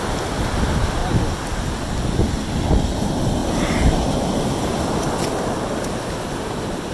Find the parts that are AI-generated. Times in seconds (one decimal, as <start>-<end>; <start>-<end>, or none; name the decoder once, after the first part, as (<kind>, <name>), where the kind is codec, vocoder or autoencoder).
1.0-1.5 (vocoder, BigVGAN v2); 3.4-4.8